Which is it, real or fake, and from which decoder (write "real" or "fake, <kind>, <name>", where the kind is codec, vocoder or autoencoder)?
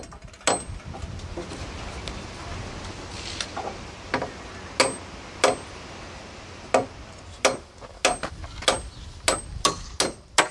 real